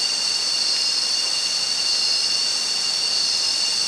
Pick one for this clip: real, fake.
real